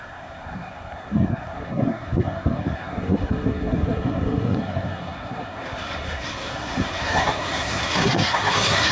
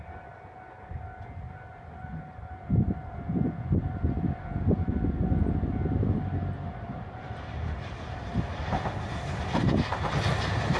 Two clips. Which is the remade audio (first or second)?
first